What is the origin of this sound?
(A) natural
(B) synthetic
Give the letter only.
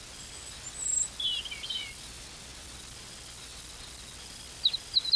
A